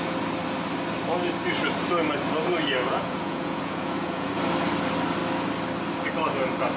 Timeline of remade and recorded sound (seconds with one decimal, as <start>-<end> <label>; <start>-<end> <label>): 0.0-2.8 recorded; 2.8-4.3 remade; 4.3-6.8 recorded